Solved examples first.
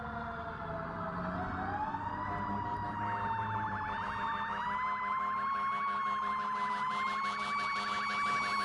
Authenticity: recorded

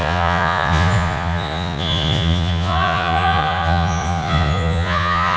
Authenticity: remade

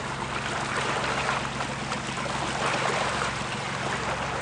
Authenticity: recorded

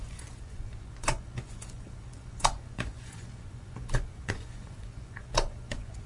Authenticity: remade